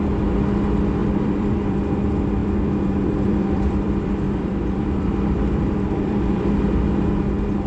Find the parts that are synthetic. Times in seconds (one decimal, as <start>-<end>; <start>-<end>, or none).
1.0-1.8; 2.4-6.6